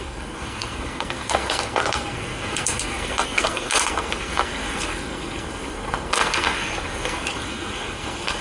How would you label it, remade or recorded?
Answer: remade